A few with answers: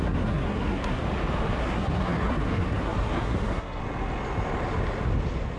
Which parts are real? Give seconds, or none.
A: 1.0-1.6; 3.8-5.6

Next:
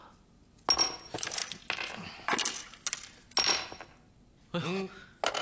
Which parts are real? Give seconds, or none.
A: 0.0-5.4

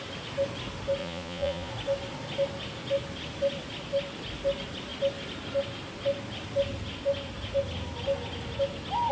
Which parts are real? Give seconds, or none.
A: 0.0-1.0; 1.7-9.1